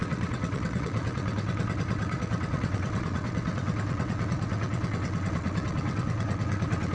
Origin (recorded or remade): remade